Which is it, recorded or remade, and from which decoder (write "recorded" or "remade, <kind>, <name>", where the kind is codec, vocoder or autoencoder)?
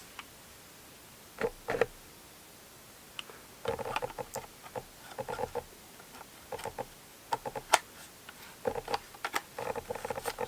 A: recorded